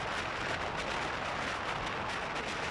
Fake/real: real